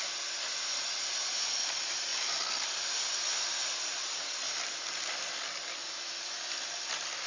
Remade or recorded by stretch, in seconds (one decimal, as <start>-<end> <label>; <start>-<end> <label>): 0.0-7.3 recorded